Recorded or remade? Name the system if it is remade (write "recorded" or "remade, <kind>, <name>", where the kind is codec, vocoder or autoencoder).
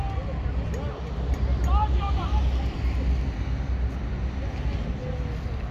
recorded